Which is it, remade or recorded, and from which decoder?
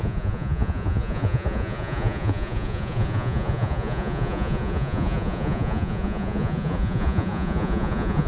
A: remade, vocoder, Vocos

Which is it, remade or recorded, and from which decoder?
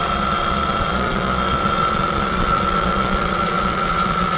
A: remade, vocoder, Vocos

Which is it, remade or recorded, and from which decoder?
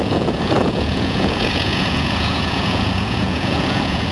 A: remade, vocoder, Vocos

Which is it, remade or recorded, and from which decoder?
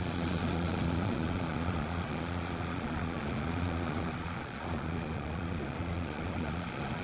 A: remade, vocoder, Vocos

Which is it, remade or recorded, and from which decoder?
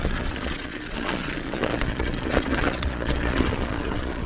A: remade, vocoder, Vocos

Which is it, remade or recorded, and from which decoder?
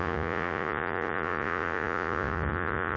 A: remade, vocoder, Vocos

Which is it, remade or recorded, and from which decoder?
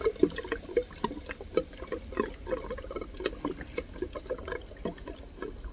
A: recorded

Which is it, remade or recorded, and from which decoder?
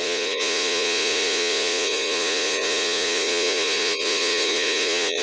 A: remade, vocoder, Vocos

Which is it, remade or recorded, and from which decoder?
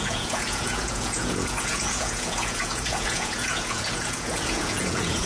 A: remade, vocoder, Vocos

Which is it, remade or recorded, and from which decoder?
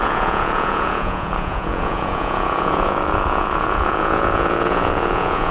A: remade, vocoder, Vocos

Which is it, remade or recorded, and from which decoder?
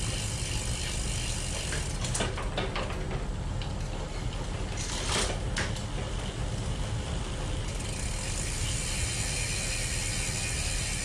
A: recorded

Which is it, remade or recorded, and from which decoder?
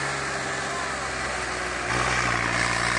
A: recorded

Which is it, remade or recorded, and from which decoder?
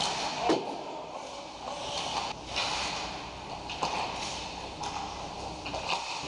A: recorded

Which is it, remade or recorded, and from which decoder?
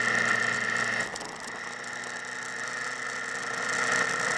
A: recorded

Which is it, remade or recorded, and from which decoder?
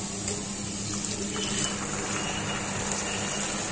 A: recorded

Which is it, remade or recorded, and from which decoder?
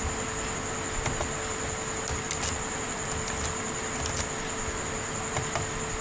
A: recorded